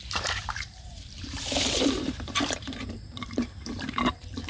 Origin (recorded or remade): remade